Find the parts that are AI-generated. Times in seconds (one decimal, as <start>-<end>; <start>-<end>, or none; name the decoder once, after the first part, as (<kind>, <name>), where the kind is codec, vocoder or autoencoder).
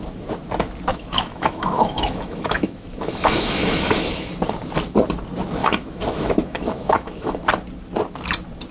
0.9-4.3 (autoencoder, DAC-VAE); 5.6-7.4